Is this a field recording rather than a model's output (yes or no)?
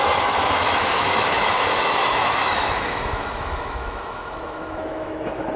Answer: no